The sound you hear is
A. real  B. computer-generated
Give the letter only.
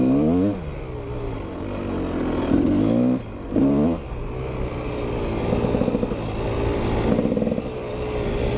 A